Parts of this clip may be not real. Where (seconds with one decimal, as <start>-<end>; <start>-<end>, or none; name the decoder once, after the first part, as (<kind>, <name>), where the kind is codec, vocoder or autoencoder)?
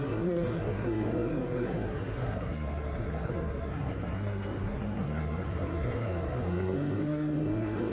0.0-7.9 (codec, SNAC)